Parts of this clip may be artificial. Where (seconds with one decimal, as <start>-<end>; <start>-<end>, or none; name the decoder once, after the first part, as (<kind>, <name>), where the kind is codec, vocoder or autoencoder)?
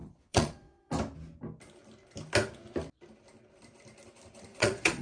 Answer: 0.0-0.9 (vocoder, Vocos); 4.5-5.0